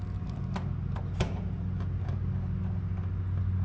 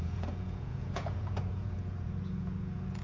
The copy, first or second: second